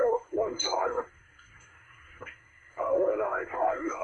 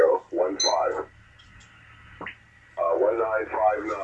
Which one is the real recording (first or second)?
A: second